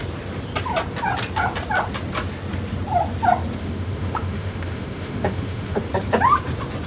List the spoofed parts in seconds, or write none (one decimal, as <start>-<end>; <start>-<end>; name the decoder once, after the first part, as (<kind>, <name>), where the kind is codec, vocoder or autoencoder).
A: 3.6-5.8 (autoencoder, DAC-VAE)